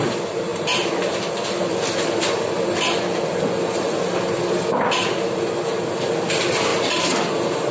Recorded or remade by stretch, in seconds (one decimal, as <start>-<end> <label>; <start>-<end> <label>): 0.0-7.7 recorded